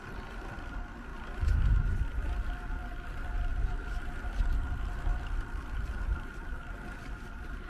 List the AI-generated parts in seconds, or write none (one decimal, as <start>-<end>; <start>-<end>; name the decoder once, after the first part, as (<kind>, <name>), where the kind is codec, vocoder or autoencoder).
1.1-2.0 (vocoder, BigVGAN v2); 3.5-4.4; 6.1-7.7